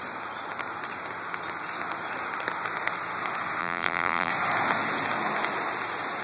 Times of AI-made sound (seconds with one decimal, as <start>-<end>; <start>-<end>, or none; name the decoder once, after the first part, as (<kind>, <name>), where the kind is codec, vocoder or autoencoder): 3.6-4.3 (vocoder, BigVGAN v2)